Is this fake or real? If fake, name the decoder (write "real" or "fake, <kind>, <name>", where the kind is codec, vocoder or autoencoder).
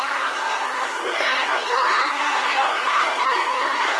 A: fake, codec, SNAC